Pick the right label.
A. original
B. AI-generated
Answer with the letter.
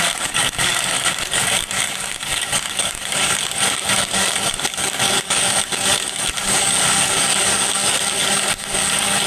B